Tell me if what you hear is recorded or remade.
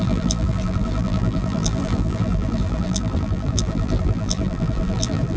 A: remade